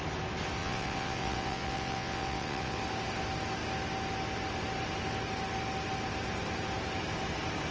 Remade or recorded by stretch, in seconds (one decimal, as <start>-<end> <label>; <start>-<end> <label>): 0.0-0.6 recorded; 0.6-2.8 remade; 2.8-7.7 recorded